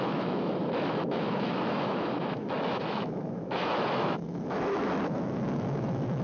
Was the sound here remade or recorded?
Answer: remade